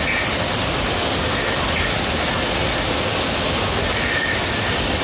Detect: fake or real real